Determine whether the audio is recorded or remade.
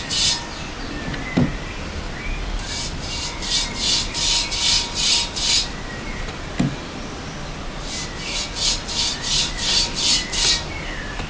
recorded